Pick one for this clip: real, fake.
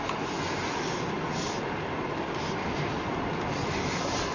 real